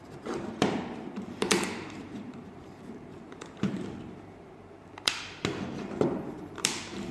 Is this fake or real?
fake